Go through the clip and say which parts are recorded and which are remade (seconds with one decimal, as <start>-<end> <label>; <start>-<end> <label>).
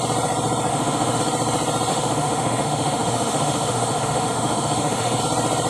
0.0-0.7 recorded; 0.7-1.2 remade; 1.2-1.9 recorded; 1.9-5.2 remade; 5.2-5.7 recorded